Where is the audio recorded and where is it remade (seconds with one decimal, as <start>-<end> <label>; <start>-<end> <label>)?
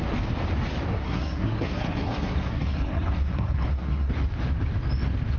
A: 0.0-0.9 recorded; 0.9-4.1 remade; 4.1-5.4 recorded